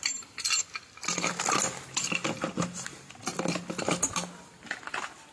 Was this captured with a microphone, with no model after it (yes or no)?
yes